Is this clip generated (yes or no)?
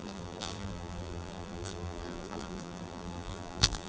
yes